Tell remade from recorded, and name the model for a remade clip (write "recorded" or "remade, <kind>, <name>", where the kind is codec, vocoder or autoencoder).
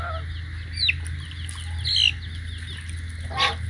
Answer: recorded